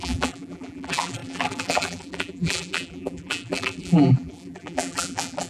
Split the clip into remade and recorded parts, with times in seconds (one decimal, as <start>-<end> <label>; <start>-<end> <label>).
0.0-5.5 remade